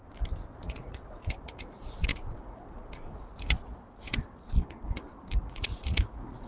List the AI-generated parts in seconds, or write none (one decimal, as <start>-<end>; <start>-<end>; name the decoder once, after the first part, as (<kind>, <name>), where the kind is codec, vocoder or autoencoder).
0.6-3.7 (vocoder, Vocos); 5.4-6.5